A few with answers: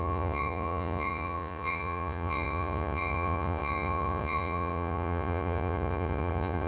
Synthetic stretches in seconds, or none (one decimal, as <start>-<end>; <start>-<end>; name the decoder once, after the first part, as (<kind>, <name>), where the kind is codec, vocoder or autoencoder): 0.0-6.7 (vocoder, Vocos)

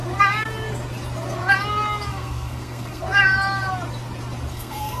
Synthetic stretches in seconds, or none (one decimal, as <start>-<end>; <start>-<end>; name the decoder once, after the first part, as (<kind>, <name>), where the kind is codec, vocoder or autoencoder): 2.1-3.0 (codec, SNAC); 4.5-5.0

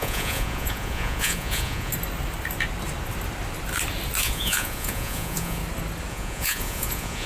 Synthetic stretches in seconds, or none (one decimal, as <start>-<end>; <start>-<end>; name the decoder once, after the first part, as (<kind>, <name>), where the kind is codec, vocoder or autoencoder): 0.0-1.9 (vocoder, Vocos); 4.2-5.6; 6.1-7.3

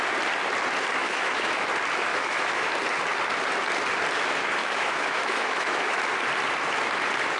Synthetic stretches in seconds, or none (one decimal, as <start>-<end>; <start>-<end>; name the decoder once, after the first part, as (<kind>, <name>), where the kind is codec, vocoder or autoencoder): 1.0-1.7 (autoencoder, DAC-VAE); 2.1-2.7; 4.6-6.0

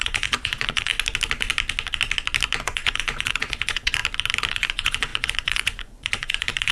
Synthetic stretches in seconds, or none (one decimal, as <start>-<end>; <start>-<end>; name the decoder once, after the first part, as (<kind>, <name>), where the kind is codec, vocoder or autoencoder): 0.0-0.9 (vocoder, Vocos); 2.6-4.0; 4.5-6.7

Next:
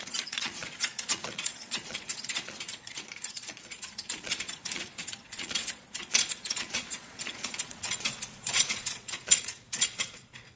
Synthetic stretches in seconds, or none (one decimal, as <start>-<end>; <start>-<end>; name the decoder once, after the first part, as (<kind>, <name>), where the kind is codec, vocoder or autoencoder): 0.0-10.6 (vocoder, Vocos)